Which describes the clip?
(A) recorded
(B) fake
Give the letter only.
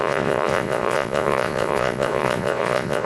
B